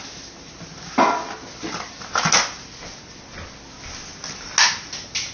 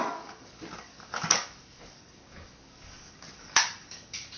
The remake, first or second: second